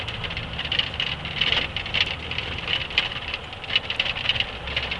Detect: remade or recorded recorded